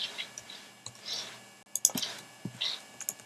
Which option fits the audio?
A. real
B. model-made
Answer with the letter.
A